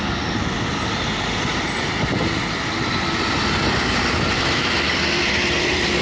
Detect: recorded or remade recorded